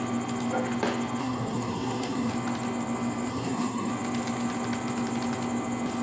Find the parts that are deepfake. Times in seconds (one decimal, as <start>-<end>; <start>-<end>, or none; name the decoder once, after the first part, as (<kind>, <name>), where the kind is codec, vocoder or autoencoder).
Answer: 1.2-2.3 (codec, SNAC); 3.3-3.9